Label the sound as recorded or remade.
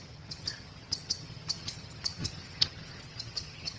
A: remade